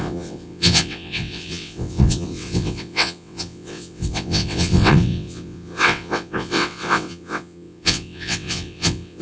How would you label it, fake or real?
fake